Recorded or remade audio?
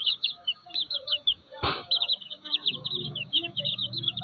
remade